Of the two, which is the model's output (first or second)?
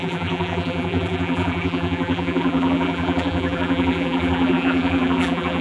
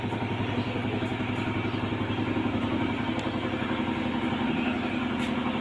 first